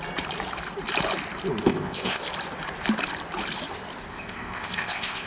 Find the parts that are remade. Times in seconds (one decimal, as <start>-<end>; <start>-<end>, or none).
1.6-2.2; 4.1-5.3